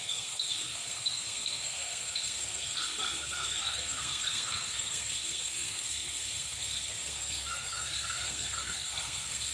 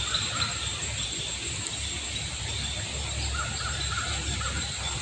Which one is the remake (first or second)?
first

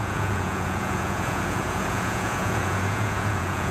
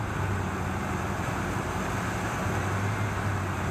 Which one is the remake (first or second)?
first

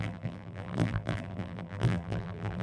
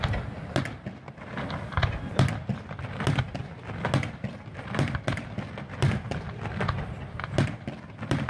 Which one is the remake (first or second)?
first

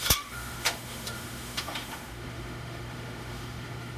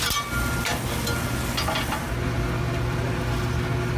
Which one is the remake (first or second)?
first